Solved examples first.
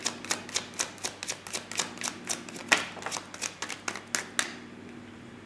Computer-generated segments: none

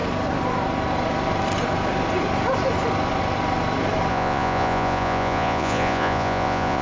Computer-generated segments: 4.1-6.8 (vocoder, Vocos)

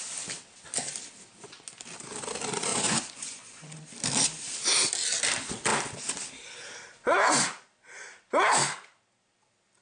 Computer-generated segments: 2.7-3.8 (vocoder, Vocos)

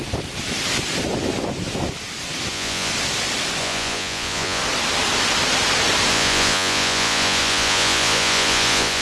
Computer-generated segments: 2.5-2.9 (vocoder, Vocos); 3.6-4.6; 6.1-9.0

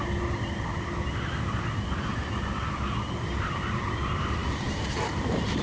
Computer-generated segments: none

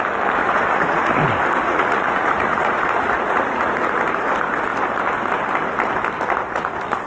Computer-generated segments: 0.4-1.2 (vocoder, Vocos); 1.6-4.0